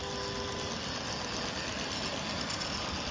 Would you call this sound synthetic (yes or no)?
no